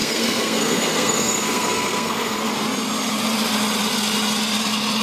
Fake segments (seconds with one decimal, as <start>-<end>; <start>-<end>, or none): 0.0-2.5